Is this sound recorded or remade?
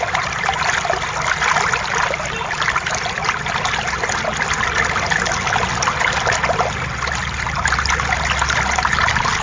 recorded